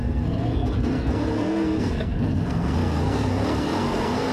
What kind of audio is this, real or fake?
fake